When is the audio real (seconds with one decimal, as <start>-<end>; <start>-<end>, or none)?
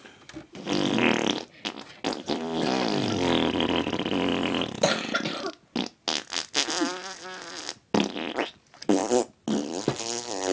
0.0-10.5